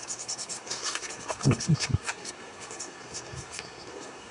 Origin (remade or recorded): remade